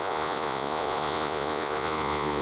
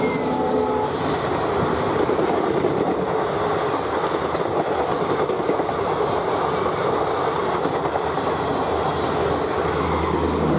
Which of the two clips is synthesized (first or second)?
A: first